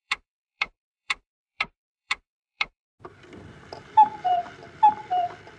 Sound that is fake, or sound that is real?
fake